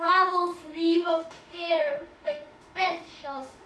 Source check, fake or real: fake